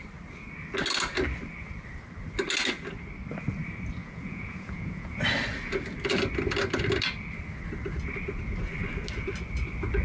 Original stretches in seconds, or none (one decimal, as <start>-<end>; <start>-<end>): 0.0-4.0; 5.2-10.0